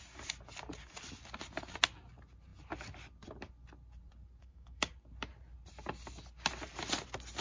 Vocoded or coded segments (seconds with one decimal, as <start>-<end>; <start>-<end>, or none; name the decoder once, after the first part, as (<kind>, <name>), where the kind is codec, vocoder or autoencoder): 4.4-4.9 (autoencoder, DAC-VAE)